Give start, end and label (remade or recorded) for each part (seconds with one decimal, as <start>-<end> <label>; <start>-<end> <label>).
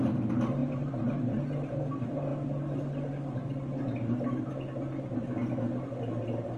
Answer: 0.0-6.6 recorded